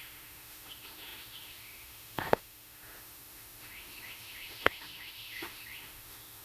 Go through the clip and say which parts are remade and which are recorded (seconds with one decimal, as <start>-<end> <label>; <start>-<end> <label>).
0.0-6.4 remade